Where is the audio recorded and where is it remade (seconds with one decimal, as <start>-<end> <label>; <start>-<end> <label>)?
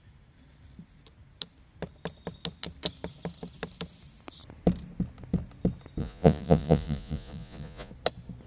0.0-6.0 recorded; 6.0-7.9 remade; 7.9-8.5 recorded